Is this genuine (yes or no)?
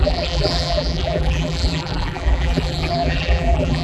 no